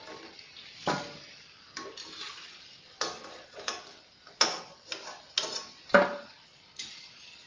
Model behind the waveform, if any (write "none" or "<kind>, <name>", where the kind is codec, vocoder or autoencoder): none